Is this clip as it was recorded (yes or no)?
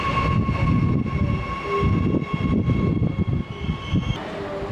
yes